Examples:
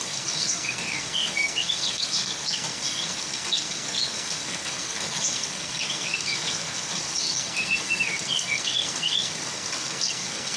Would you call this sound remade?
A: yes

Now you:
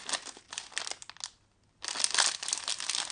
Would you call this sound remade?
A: no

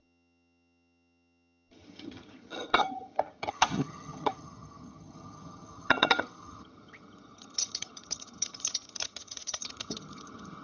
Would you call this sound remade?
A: yes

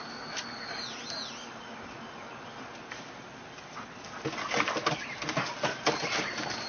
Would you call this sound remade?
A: no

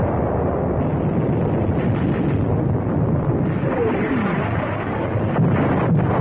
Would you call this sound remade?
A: no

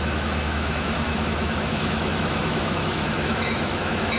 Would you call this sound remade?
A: yes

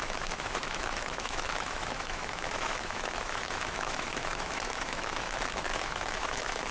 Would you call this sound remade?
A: yes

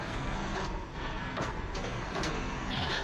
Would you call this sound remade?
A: yes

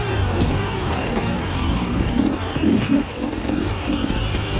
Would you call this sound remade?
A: yes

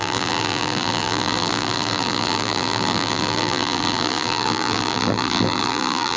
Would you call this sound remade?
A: yes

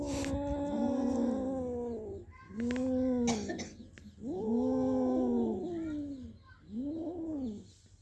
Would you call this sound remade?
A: no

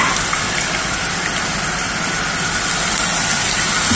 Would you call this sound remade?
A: no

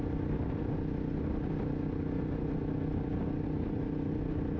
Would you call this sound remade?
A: no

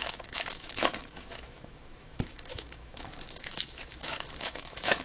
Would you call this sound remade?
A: yes